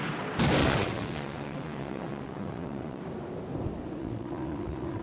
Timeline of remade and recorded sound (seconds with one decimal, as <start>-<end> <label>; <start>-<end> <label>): 0.0-0.6 recorded; 0.6-3.0 remade; 3.0-4.0 recorded; 4.0-5.0 remade